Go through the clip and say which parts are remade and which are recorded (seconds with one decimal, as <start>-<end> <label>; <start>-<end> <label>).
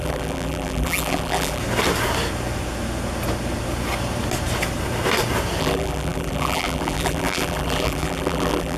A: 0.0-1.6 remade; 1.6-5.6 recorded; 5.6-8.8 remade